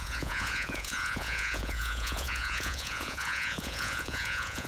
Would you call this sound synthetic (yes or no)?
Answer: yes